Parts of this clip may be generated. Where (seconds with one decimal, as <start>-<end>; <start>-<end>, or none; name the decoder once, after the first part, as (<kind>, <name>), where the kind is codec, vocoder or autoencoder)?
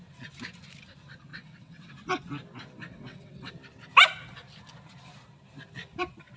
1.3-1.9 (vocoder, WaveNeXt); 2.9-3.5